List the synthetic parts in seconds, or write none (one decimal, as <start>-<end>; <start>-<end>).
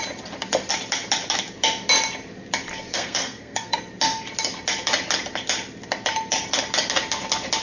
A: 2.9-3.8